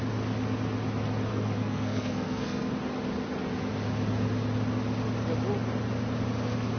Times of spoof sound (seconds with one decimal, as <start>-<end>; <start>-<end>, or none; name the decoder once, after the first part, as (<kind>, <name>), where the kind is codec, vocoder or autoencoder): 1.3-2.7 (codec, SNAC)